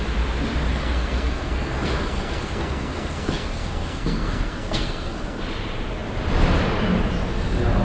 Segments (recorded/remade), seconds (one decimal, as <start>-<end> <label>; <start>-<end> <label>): 0.0-0.7 recorded; 0.7-5.4 remade; 5.4-7.8 recorded